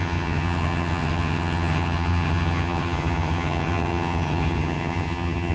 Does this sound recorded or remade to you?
remade